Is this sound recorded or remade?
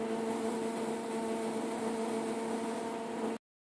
recorded